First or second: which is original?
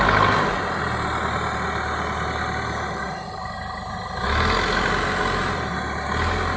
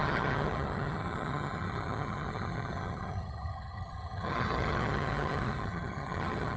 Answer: first